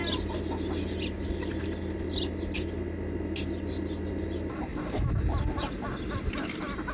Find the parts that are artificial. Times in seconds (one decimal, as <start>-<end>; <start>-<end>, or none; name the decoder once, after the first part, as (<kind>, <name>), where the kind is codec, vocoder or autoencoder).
none